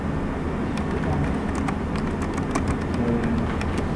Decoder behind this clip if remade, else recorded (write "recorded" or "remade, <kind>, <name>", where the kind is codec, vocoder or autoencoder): recorded